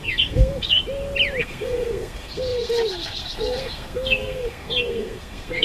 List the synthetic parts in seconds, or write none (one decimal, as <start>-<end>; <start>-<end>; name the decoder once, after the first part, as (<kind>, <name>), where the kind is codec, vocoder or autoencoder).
0.0-0.8 (codec, SNAC); 1.4-5.6